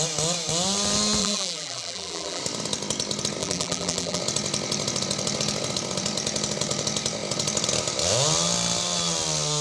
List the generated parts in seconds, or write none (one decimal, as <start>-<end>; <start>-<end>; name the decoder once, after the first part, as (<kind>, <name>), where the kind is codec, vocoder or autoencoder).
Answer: 1.2-2.4 (vocoder, BigVGAN v2); 3.4-4.2